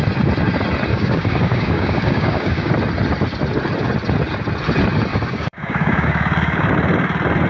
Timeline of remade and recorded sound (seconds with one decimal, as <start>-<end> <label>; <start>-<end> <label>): 0.0-0.9 recorded; 0.9-2.7 remade; 2.7-5.1 recorded; 5.1-6.7 remade; 6.7-7.5 recorded